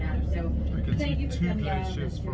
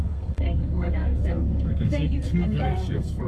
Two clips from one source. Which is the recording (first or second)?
first